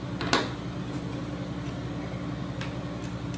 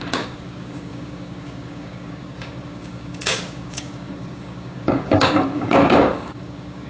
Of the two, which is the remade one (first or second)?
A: second